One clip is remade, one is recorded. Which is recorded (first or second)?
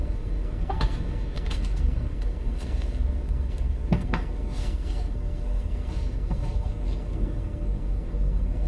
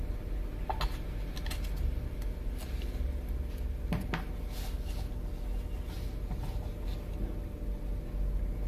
second